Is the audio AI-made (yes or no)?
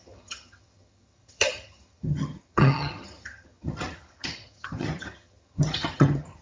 yes